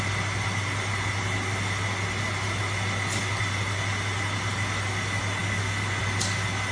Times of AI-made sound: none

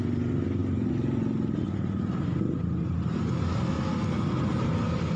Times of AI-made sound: none

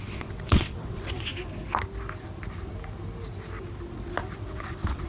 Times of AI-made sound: 0.0-1.3 (vocoder, WaveNeXt); 4.4-5.1

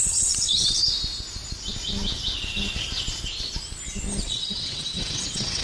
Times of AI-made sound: 0.0-0.8 (vocoder, WaveNeXt); 4.2-5.6